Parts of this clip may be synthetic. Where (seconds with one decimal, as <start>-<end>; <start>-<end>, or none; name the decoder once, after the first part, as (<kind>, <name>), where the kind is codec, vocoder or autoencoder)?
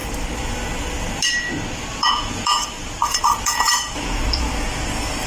1.9-2.6 (vocoder, Vocos); 3.0-4.5